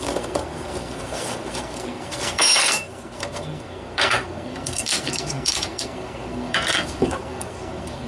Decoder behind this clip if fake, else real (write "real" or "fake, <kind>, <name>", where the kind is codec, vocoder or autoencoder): fake, codec, SNAC